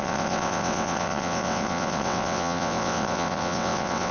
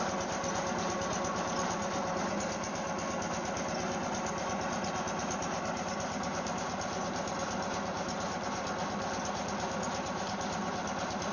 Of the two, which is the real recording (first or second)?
second